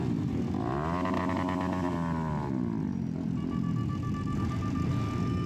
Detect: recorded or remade recorded